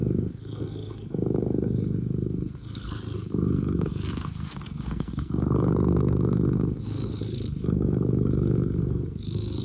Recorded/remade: remade